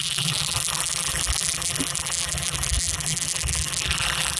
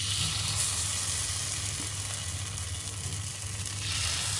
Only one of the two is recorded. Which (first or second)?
second